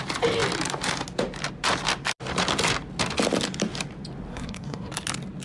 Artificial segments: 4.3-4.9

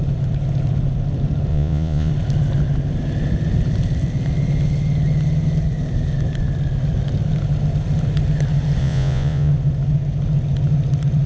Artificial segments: 1.5-2.1; 8.8-9.5

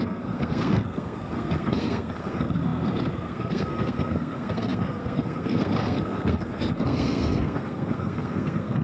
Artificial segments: 0.0-8.8

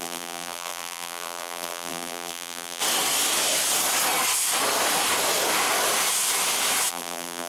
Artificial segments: 0.0-2.8; 6.9-7.5

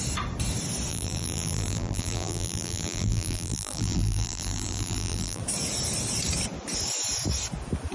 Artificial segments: 0.9-5.4

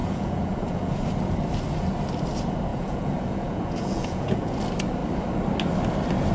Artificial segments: 0.0-1.0; 2.7-4.6

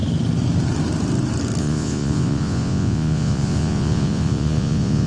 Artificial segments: 1.6-5.1

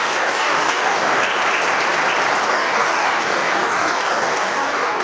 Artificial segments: 0.0-1.3; 2.4-5.0